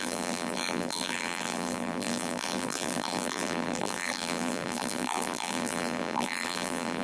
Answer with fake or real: fake